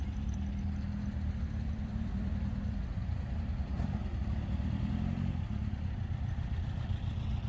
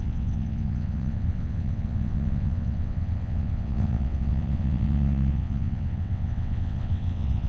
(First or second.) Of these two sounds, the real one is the first